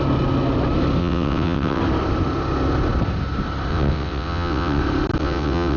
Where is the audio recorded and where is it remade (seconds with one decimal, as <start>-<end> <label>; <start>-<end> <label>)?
0.0-1.0 recorded; 1.0-1.8 remade; 1.8-3.7 recorded; 3.7-4.8 remade; 4.8-5.2 recorded; 5.2-5.8 remade